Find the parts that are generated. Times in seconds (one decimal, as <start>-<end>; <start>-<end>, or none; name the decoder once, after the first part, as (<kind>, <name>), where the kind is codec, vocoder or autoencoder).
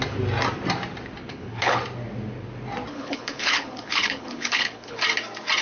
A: 1.2-1.8 (codec, HILCodec); 2.9-5.0